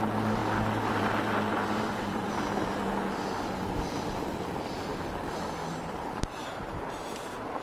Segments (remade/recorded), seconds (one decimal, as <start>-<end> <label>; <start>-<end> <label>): 0.0-1.5 recorded; 1.5-2.3 remade; 2.3-5.6 recorded; 5.6-6.8 remade; 6.8-7.6 recorded